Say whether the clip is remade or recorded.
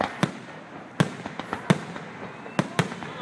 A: recorded